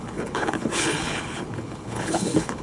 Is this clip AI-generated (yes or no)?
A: yes